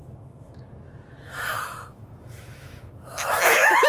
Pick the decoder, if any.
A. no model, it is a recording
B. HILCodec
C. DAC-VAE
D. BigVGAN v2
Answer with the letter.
C